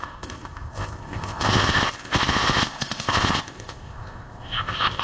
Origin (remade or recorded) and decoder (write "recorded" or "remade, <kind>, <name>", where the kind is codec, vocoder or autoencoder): remade, codec, ZipCodec